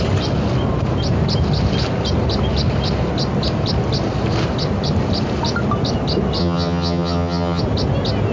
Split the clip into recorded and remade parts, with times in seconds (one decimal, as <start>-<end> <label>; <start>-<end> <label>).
0.0-6.4 recorded; 6.4-7.6 remade; 7.6-8.3 recorded